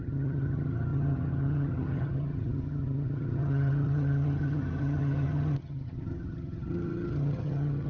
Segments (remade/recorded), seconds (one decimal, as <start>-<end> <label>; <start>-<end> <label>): 0.0-7.9 remade